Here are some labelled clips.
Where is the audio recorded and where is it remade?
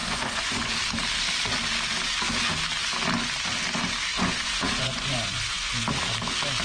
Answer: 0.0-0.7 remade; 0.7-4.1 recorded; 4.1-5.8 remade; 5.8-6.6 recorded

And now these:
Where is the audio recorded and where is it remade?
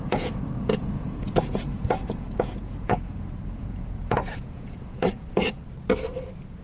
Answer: 0.0-5.6 remade; 5.6-6.6 recorded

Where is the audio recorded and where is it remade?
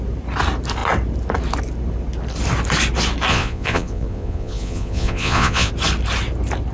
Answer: 0.0-3.3 recorded; 3.3-5.7 remade; 5.7-6.7 recorded